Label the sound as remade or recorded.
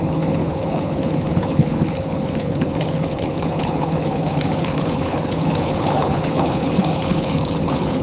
remade